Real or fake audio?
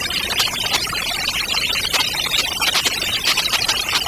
real